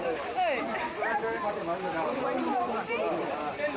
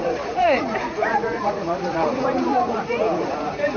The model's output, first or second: second